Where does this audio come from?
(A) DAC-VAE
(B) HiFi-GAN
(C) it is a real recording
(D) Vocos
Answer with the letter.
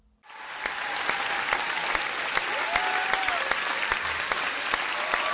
C